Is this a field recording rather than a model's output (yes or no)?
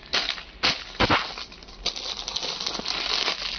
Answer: yes